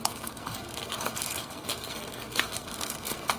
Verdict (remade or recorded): remade